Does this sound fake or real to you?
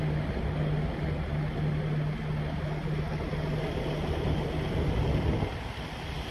real